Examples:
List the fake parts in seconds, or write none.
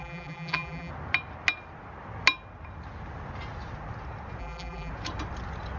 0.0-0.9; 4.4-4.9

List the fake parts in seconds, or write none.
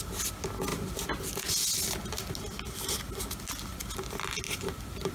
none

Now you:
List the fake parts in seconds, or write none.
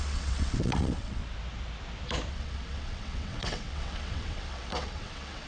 0.0-1.2; 2.3-5.5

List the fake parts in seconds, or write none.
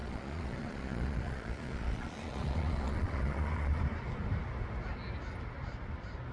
0.0-3.8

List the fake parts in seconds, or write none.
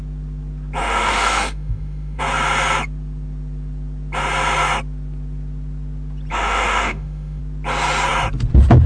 0.8-2.2; 6.3-7.4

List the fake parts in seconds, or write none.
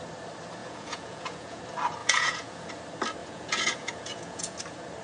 0.6-1.6; 2.0-2.7; 3.2-4.6